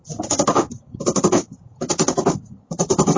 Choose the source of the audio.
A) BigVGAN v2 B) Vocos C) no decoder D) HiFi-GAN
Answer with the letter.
A